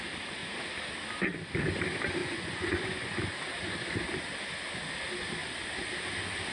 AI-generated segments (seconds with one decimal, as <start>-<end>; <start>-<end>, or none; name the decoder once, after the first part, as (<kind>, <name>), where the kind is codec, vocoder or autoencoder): 2.2-3.2 (vocoder, Vocos)